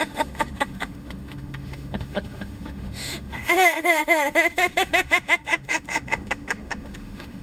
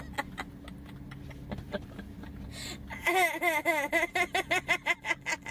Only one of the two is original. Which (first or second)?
second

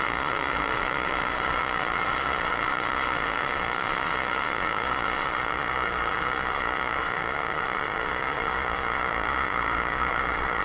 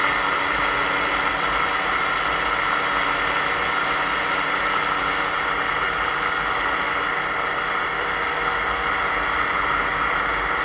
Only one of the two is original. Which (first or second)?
second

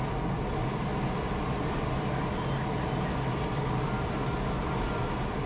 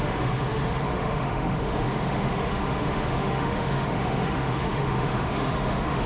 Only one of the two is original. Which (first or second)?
first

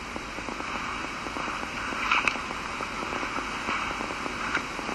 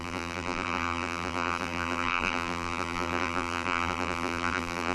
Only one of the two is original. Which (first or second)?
first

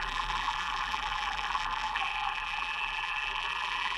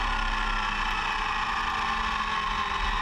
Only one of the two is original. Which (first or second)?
second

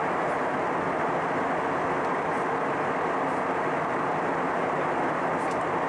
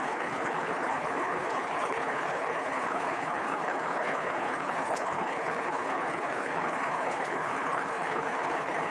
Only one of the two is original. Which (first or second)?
first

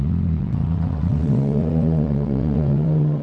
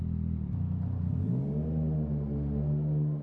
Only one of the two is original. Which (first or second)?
second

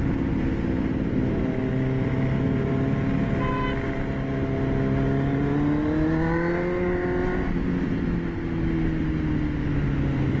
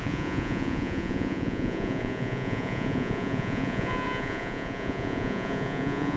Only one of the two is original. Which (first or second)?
first